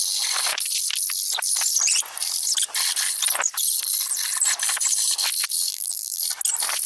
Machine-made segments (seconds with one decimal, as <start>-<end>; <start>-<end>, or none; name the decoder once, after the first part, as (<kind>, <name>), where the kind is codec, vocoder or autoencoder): 5.7-6.2 (vocoder, BigVGAN v2)